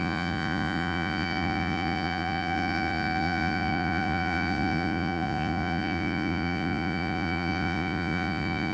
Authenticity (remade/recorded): remade